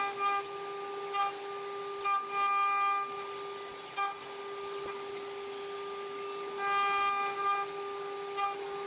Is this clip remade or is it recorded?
recorded